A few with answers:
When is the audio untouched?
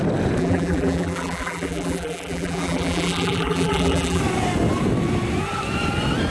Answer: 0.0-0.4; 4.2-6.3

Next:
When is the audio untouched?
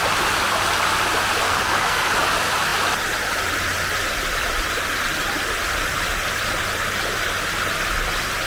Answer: 0.0-1.4; 2.1-8.5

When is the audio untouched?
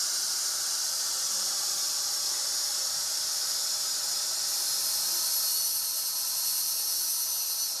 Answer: 0.0-7.8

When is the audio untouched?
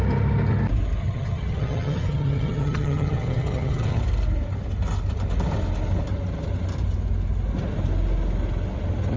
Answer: 0.0-1.0; 4.0-9.2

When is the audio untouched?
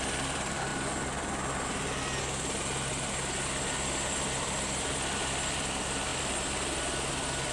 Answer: 0.7-3.7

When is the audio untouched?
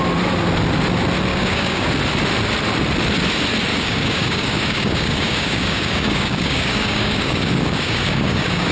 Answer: 0.0-1.3; 1.9-3.7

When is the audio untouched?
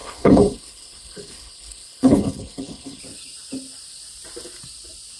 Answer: 3.0-5.2